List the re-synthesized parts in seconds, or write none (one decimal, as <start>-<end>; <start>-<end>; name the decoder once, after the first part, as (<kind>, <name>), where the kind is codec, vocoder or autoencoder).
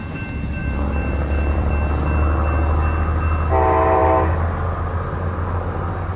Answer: 0.6-1.7 (vocoder, BigVGAN v2)